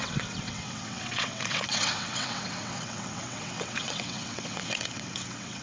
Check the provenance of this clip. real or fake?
fake